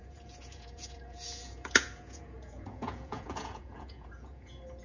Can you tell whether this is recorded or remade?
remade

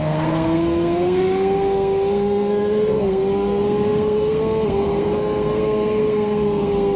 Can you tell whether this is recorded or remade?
remade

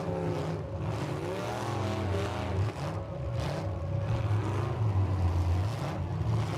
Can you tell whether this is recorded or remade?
recorded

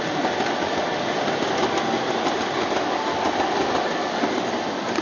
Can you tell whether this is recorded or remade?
recorded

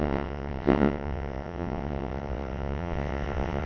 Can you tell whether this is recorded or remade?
remade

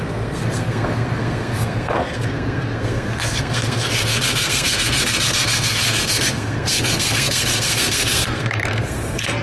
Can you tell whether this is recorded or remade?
remade